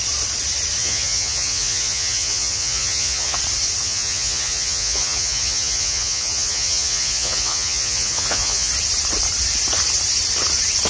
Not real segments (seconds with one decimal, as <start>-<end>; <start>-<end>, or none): 0.8-3.4; 3.8-8.7